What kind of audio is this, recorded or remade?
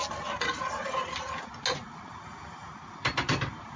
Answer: recorded